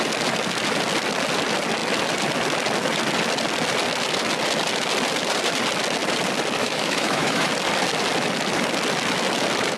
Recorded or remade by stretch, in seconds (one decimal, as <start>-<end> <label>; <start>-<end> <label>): 0.0-6.6 recorded; 6.6-7.5 remade; 7.5-9.8 recorded